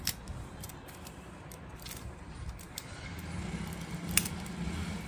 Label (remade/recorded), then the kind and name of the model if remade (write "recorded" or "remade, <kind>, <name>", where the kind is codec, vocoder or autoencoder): recorded